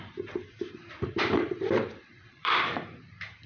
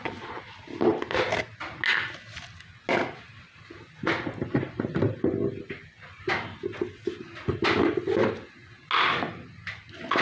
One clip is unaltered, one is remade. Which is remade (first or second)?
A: first